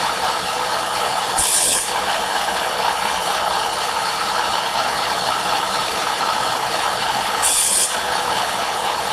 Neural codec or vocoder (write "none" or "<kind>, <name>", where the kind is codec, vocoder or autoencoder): codec, HILCodec